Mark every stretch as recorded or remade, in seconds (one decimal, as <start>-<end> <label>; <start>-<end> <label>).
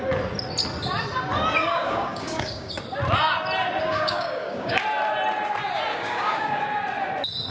0.0-1.6 recorded; 1.6-2.8 remade; 2.8-3.8 recorded; 3.8-4.8 remade; 4.8-5.9 recorded; 5.9-6.6 remade; 6.6-7.5 recorded